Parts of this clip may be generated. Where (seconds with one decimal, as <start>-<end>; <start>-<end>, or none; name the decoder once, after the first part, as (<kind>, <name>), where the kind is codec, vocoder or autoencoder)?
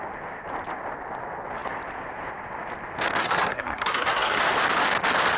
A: 3.2-4.4 (codec, SNAC)